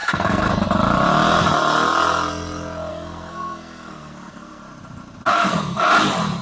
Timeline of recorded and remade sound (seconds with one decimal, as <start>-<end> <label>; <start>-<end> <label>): 0.0-0.6 remade; 0.6-2.9 recorded; 2.9-4.6 remade; 4.6-5.3 recorded; 5.3-5.9 remade; 5.9-6.4 recorded